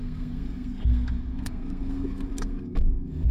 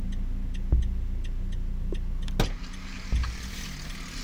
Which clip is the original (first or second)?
second